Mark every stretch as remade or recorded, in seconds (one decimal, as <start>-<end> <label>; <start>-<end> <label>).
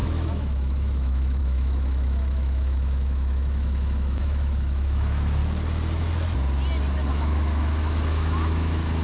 0.0-5.4 remade; 5.4-7.1 recorded; 7.1-9.0 remade